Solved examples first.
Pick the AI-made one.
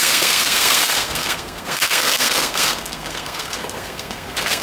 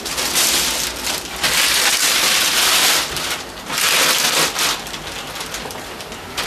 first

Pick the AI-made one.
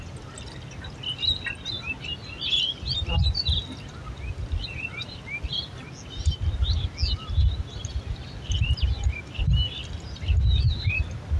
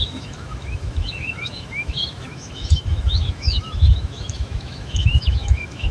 second